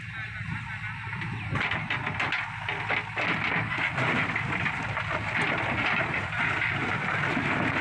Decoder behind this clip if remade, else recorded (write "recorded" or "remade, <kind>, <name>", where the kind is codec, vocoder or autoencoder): recorded